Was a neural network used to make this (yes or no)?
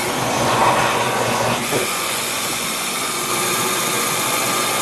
yes